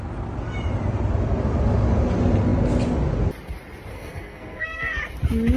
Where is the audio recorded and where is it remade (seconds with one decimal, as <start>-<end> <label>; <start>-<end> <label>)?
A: 0.0-3.9 recorded; 3.9-5.0 remade; 5.0-5.6 recorded